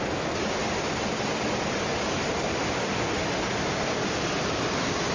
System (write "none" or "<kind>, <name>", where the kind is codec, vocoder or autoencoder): none